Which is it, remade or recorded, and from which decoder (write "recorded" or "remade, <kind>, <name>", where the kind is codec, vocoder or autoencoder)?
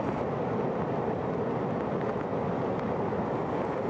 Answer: recorded